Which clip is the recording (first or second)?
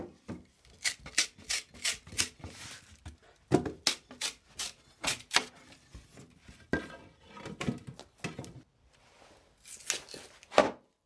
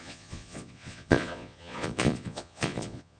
first